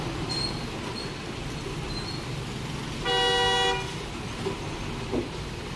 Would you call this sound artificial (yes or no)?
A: no